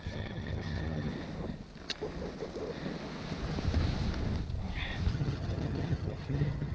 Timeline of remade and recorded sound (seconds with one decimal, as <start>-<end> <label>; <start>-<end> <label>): 0.0-1.1 remade; 1.1-5.1 recorded; 5.1-6.7 remade